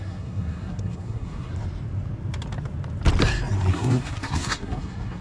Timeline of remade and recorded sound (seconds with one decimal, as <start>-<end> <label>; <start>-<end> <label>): 0.0-1.5 remade; 1.5-3.7 recorded; 3.7-5.2 remade